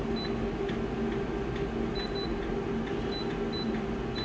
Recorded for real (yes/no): yes